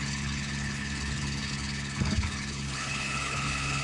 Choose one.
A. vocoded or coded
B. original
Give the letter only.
A